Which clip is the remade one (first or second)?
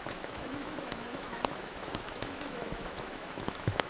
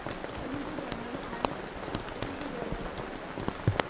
first